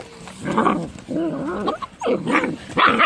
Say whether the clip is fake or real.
real